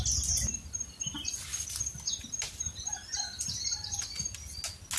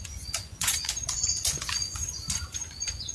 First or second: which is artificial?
second